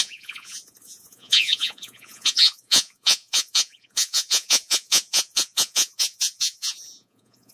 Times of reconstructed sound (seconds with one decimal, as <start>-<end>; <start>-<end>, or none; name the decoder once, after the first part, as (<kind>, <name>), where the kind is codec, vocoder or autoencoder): 0.0-7.5 (vocoder, Vocos)